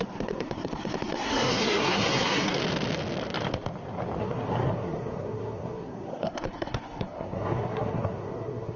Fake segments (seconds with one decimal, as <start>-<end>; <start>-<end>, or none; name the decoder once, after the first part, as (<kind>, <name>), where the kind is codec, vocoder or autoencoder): 0.0-2.6 (codec, SNAC); 4.2-8.8